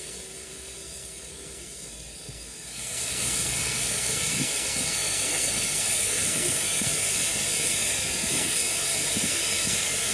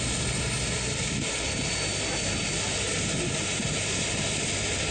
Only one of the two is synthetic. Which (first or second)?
first